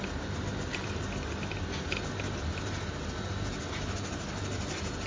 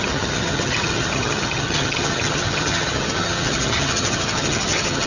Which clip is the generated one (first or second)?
second